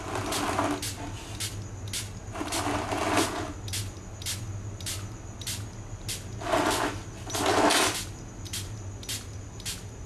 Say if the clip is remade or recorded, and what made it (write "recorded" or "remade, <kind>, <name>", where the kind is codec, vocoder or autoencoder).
recorded